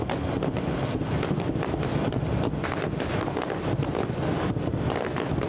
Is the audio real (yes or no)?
no